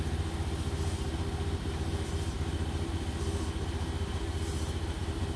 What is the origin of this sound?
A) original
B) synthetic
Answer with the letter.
A